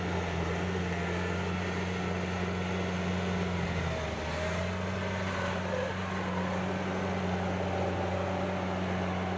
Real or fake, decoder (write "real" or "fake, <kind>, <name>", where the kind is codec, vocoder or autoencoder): real